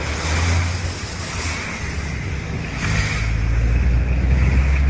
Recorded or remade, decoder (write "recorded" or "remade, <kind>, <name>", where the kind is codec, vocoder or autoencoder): recorded